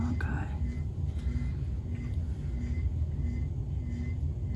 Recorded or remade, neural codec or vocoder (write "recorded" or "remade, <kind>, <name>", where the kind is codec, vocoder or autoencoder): recorded